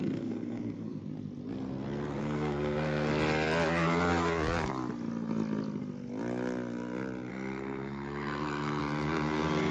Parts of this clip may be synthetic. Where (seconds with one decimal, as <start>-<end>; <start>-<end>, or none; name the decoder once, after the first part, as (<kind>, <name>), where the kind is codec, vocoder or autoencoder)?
0.0-1.0 (codec, SNAC); 2.2-3.1; 7.3-8.8